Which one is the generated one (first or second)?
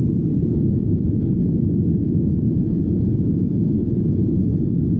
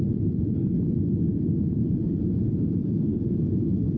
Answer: first